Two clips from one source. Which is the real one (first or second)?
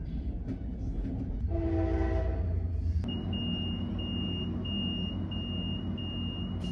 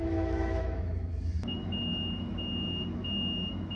first